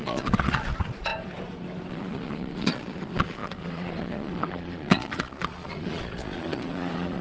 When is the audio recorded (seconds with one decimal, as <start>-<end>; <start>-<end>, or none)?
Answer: 1.1-1.9